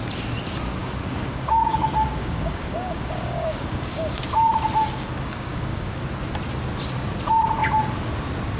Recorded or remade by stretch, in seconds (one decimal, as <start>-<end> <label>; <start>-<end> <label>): 0.0-0.8 recorded; 0.8-1.8 remade; 1.8-2.2 recorded; 2.2-4.2 remade; 4.2-4.8 recorded; 4.8-6.0 remade; 6.0-8.6 recorded